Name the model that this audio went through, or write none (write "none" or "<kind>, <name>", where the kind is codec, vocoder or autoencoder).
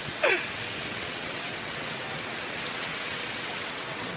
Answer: vocoder, WaveNeXt